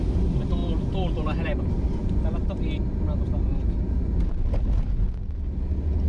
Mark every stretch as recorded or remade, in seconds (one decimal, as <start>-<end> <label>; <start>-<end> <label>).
0.0-6.1 recorded

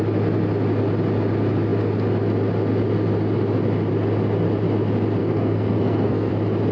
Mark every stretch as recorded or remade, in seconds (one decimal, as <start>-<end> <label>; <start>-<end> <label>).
0.0-5.2 recorded; 5.2-6.3 remade; 6.3-6.7 recorded

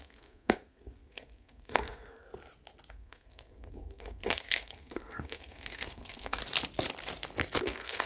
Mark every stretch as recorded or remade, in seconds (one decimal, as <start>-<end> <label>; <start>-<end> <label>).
0.0-2.3 remade; 2.3-2.9 recorded; 2.9-6.4 remade; 6.4-7.6 recorded; 7.6-8.1 remade